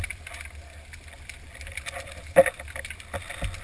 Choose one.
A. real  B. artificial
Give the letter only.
A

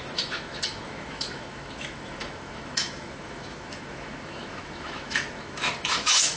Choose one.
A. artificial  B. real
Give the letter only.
A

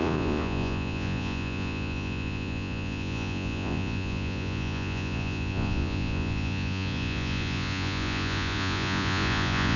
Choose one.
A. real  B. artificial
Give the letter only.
B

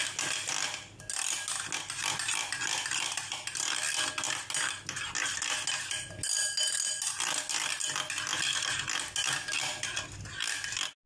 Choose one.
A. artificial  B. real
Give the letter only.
B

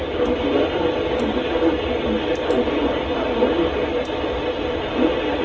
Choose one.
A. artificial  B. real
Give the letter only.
B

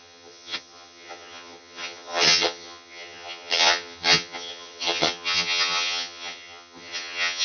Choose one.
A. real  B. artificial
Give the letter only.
B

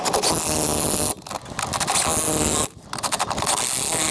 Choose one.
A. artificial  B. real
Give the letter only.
B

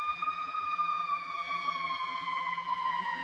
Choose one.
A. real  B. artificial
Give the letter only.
B